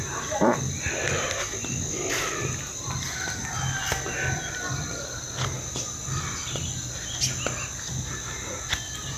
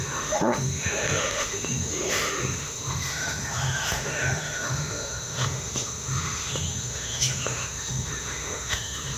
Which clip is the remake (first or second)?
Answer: second